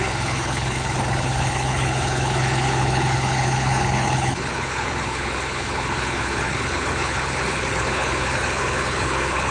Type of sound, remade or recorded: remade